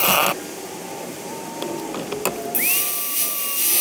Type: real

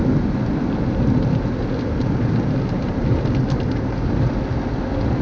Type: real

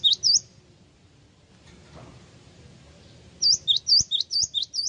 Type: real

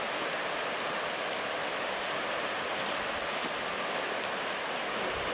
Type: real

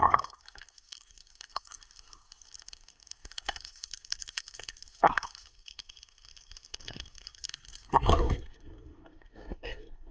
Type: fake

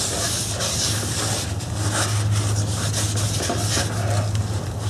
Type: real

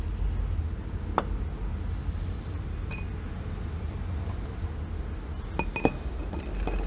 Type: real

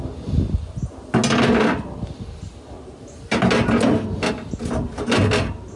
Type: real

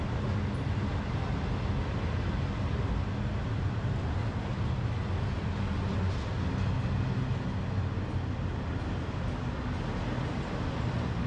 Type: real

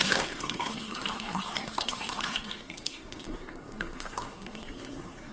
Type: fake